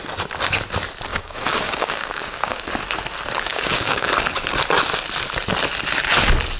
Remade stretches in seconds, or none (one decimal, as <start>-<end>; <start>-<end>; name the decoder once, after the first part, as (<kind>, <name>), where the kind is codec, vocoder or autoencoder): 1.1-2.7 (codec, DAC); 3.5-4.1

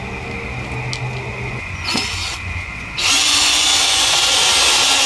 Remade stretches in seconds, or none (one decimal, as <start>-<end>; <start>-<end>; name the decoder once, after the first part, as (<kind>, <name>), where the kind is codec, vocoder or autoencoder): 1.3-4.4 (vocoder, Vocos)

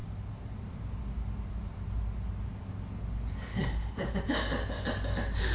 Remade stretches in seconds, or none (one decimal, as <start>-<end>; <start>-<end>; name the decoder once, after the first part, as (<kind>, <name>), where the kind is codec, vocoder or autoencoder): 3.5-4.2 (codec, HILCodec)